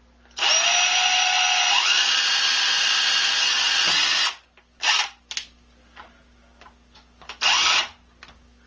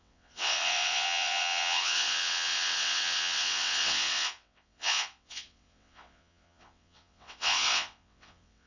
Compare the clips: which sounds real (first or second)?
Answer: first